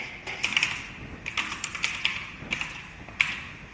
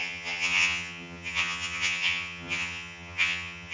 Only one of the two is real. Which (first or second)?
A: first